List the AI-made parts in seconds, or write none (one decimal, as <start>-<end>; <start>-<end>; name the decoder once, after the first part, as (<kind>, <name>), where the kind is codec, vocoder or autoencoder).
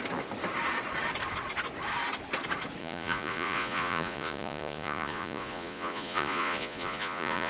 2.8-7.5 (vocoder, Vocos)